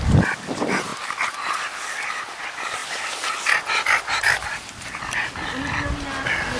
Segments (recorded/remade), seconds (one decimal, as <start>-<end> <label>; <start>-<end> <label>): 0.0-6.6 recorded